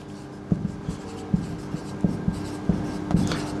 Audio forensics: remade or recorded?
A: recorded